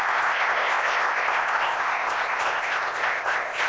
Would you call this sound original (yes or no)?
no